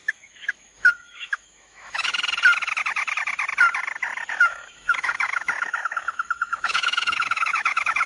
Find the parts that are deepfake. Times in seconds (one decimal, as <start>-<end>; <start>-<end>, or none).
0.0-2.1; 4.4-8.1